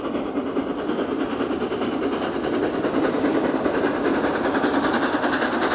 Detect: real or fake real